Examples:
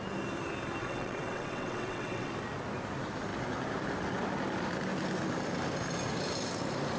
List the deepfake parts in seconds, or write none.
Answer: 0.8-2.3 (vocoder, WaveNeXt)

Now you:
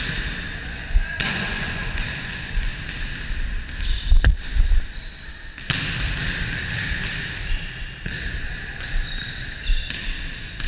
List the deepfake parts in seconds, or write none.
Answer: 0.6-2.7 (vocoder, Vocos)

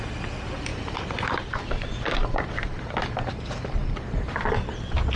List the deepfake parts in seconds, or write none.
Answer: 0.7-3.3 (vocoder, BigVGAN v2)

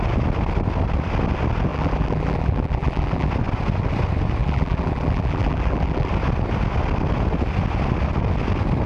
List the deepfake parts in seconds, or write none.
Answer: 1.7-3.3 (vocoder, BigVGAN v2); 4.4-6.1

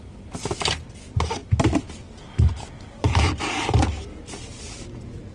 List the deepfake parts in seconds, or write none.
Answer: none

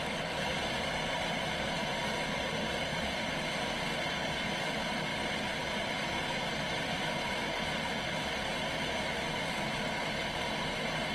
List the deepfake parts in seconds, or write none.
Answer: 0.5-2.0 (vocoder, BigVGAN v2); 2.9-3.5; 5.1-8.0